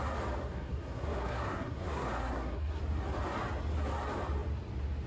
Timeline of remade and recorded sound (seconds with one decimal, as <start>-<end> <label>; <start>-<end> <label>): 0.0-0.4 recorded; 0.4-2.8 remade; 2.8-5.1 recorded